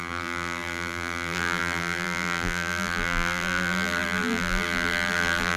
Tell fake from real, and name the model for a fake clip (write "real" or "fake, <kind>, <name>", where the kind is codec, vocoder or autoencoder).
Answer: fake, vocoder, BigVGAN v2